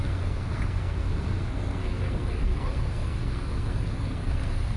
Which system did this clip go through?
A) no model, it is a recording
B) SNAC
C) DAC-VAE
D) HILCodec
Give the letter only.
B